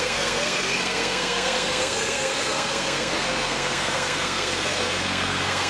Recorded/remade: remade